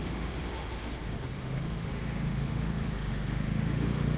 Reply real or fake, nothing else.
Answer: fake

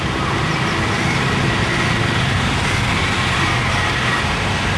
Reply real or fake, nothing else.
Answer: real